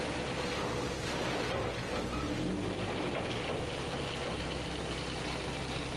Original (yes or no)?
yes